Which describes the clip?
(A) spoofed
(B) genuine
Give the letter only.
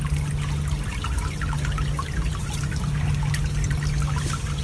B